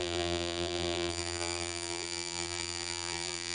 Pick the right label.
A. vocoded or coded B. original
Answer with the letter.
A